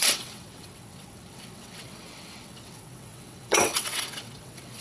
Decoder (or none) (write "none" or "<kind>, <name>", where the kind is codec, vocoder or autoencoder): vocoder, WaveNeXt